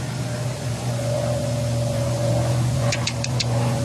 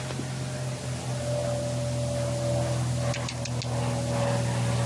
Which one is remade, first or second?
first